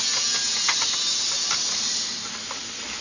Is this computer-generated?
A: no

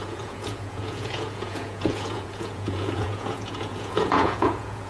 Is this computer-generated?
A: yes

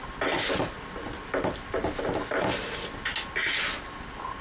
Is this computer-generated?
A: no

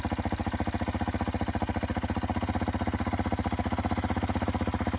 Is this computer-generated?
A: no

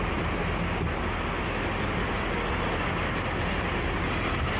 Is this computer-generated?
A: no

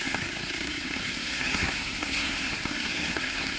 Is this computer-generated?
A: yes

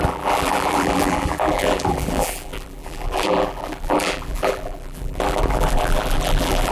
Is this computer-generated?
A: yes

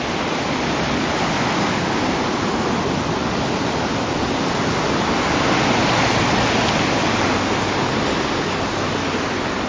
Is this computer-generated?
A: no